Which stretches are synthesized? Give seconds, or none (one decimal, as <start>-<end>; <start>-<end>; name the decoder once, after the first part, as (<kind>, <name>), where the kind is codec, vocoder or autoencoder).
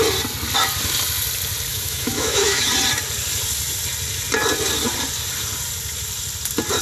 1.7-2.7 (autoencoder, DAC-VAE)